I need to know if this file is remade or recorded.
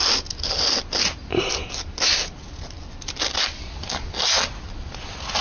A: recorded